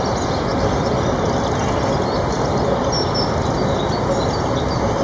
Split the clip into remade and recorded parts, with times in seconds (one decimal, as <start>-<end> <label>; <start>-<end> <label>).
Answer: 0.0-5.0 recorded